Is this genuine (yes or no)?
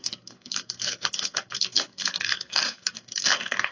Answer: no